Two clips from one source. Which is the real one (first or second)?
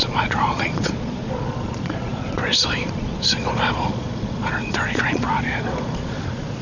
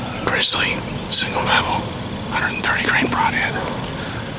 second